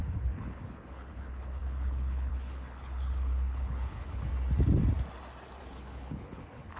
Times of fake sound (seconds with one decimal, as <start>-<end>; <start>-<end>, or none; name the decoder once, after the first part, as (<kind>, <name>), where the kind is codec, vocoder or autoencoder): 0.0-4.3 (codec, HILCodec); 5.6-6.8